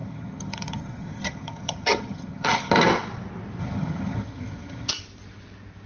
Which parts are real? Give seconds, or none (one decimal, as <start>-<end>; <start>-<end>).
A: 2.7-3.6; 4.9-5.9